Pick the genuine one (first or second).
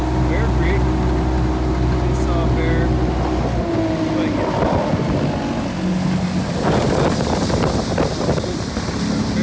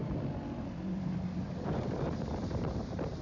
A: first